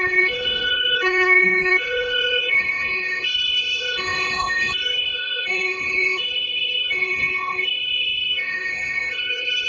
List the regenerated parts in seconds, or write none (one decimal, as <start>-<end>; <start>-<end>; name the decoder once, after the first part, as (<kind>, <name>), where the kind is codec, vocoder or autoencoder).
0.0-9.7 (codec, HILCodec)